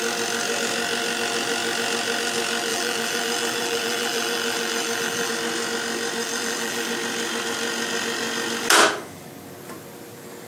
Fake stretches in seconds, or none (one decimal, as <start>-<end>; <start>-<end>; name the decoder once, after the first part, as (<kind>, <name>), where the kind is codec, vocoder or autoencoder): 2.7-5.3 (vocoder, BigVGAN v2); 6.2-6.9